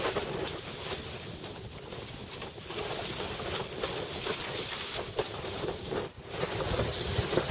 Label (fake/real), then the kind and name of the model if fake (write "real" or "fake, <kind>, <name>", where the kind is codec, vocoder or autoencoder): fake, vocoder, BigVGAN v2